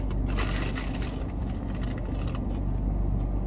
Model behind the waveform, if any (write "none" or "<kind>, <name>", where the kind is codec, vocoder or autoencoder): none